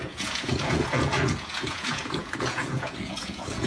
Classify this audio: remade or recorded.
remade